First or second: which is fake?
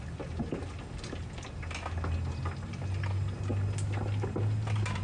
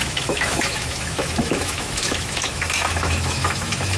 second